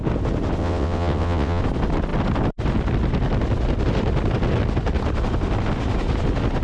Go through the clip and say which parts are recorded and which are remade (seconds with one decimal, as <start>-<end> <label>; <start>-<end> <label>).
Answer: 0.0-0.6 recorded; 0.6-1.6 remade; 1.6-6.6 recorded